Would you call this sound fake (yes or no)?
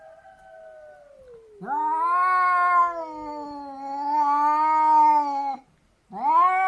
no